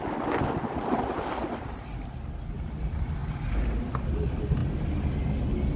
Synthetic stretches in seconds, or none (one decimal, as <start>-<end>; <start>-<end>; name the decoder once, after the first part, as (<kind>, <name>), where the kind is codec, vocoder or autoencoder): none